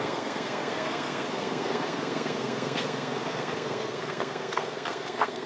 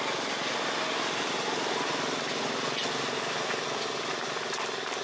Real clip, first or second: second